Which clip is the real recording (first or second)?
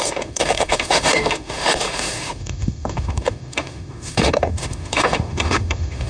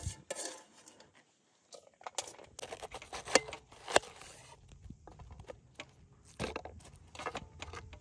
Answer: second